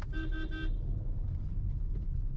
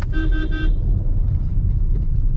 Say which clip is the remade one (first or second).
second